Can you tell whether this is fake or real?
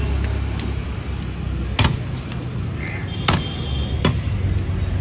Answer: real